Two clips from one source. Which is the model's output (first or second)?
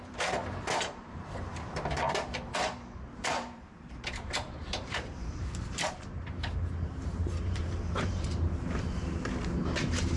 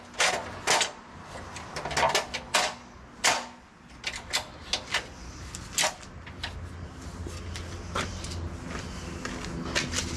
first